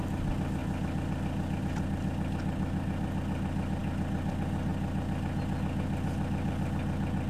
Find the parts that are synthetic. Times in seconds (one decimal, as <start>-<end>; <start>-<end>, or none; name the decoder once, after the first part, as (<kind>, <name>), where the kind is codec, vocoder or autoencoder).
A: none